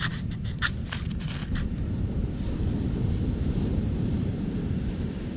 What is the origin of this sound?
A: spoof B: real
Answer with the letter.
A